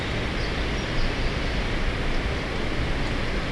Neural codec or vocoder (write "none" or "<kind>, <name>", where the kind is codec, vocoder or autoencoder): none